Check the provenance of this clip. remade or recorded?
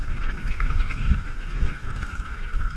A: remade